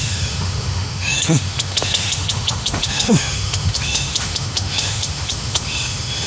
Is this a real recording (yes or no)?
no